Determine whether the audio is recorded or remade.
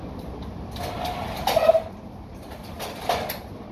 recorded